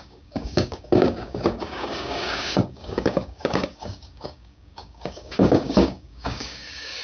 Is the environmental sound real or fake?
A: fake